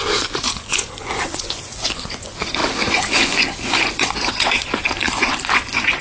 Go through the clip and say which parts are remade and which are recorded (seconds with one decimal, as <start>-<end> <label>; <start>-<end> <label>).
0.0-6.0 remade